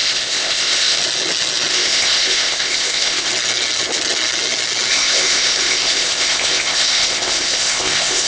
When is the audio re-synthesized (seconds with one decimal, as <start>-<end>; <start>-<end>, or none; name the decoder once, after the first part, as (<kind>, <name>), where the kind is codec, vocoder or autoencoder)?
0.0-1.0 (codec, ZipCodec); 1.7-3.3; 4.9-8.3